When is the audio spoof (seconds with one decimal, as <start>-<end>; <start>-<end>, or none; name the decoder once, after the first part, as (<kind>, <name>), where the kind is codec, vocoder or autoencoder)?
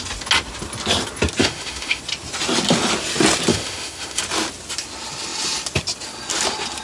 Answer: 1.4-2.0 (autoencoder, DAC-VAE); 3.5-4.2